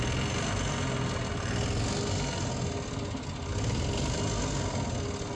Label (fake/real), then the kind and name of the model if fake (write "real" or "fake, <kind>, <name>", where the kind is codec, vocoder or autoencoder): real